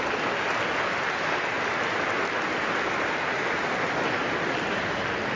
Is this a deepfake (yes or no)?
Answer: no